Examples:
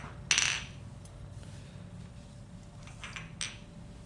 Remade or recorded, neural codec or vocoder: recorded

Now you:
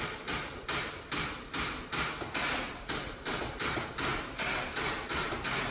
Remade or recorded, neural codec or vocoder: recorded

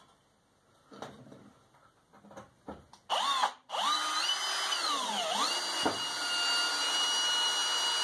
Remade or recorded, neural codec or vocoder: recorded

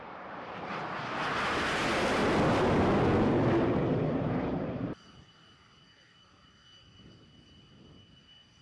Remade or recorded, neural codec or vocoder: recorded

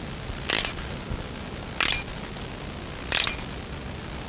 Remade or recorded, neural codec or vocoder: recorded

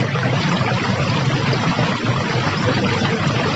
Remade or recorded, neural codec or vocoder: recorded